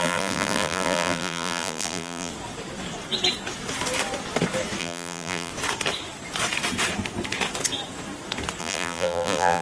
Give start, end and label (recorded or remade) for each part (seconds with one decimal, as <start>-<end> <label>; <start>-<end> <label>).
0.0-2.3 remade; 2.3-4.8 recorded; 4.8-5.5 remade; 5.5-8.6 recorded; 8.6-9.6 remade